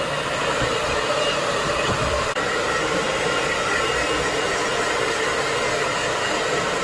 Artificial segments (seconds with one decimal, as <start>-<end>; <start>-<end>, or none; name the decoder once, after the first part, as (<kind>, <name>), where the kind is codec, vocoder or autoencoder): 0.0-0.4 (vocoder, BigVGAN v2); 1.9-4.7; 5.9-6.8